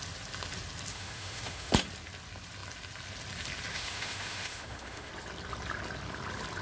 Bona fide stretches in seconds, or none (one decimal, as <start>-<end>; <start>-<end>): 0.0-0.9; 1.7-3.7; 5.1-6.6